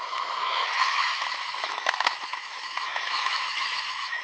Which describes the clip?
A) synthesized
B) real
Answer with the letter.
A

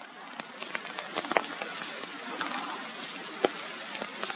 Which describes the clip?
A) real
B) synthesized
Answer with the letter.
A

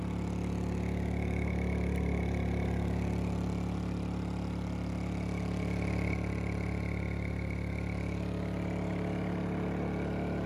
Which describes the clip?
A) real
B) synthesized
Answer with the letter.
A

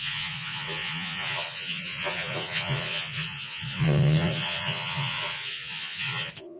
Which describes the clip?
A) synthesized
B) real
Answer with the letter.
A